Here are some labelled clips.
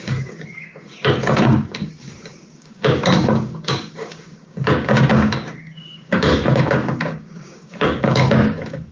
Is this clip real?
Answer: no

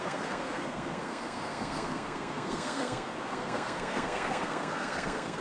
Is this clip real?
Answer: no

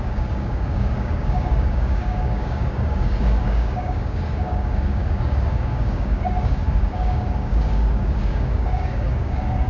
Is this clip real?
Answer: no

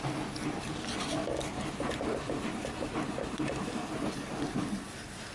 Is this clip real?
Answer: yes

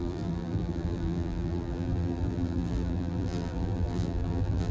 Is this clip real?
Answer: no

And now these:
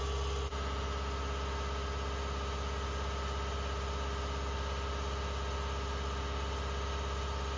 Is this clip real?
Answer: yes